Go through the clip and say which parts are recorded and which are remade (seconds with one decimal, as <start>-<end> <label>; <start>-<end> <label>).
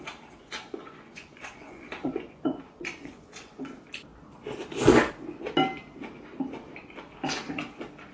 0.0-0.4 recorded; 0.4-3.6 remade; 3.6-8.1 recorded